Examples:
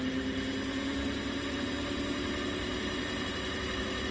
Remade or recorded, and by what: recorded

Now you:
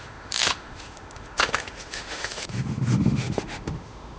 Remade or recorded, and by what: remade, autoencoder, DAC-VAE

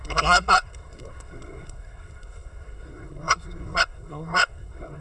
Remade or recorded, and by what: remade, codec, SNAC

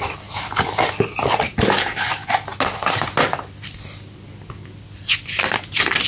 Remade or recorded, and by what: recorded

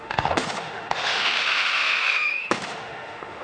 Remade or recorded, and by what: remade, autoencoder, DAC-VAE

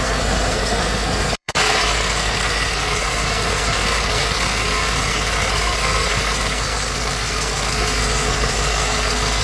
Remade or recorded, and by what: remade, codec, SNAC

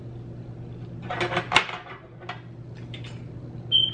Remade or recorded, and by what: recorded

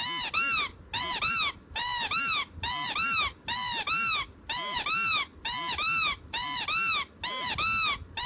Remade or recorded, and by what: recorded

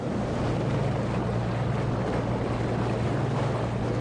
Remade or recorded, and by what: recorded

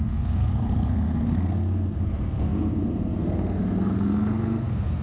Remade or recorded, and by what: remade, codec, SNAC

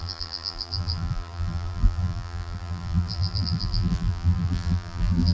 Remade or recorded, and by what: remade, vocoder, BigVGAN v2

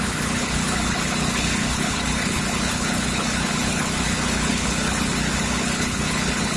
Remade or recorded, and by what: remade, codec, HILCodec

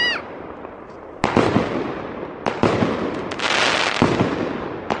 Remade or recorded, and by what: recorded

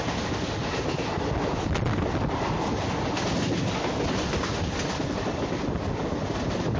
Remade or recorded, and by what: recorded